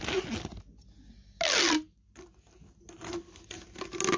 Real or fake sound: real